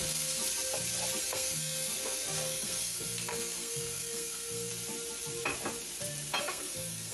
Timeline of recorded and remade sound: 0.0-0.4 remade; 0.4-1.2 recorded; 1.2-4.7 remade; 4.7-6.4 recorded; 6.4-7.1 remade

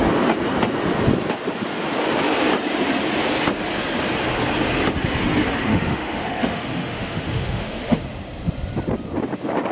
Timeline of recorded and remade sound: 0.0-5.7 recorded; 5.7-8.0 remade; 8.0-9.7 recorded

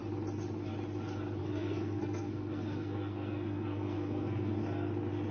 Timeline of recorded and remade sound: 0.0-1.4 recorded; 1.4-4.6 remade; 4.6-5.3 recorded

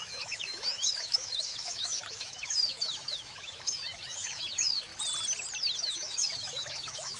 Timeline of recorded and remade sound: 0.0-4.9 remade; 4.9-5.8 recorded; 5.8-7.2 remade

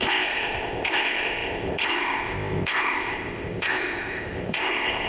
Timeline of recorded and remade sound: 0.0-5.1 remade

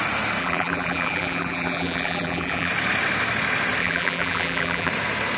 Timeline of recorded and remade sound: 0.0-0.4 recorded; 0.4-2.7 remade; 2.7-3.8 recorded; 3.8-4.9 remade; 4.9-5.4 recorded

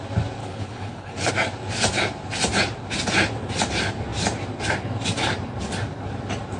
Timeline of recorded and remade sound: 0.0-0.4 recorded; 0.4-1.3 remade; 1.3-6.6 recorded

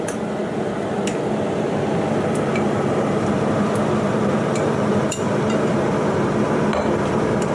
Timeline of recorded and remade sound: 0.0-0.4 remade; 0.4-2.5 recorded; 2.5-7.5 remade